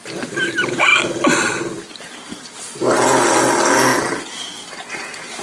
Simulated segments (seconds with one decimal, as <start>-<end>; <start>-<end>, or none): none